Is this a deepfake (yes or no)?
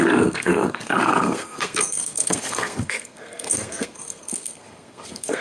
yes